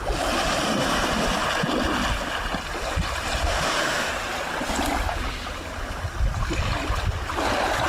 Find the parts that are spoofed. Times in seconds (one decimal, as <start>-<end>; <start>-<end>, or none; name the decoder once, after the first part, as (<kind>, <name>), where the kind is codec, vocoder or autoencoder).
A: 3.5-4.1 (autoencoder, DAC-VAE)